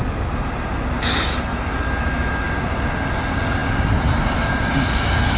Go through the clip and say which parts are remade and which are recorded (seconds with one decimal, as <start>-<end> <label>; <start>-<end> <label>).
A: 0.0-1.5 recorded; 1.5-2.5 remade; 2.5-5.4 recorded